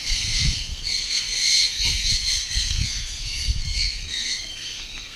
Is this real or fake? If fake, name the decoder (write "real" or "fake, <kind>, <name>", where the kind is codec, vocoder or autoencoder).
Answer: fake, codec, SNAC